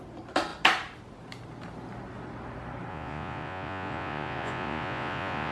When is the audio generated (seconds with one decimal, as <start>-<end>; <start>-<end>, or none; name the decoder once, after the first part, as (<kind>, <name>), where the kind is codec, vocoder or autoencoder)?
2.9-5.5 (vocoder, Vocos)